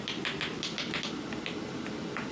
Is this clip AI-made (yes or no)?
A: no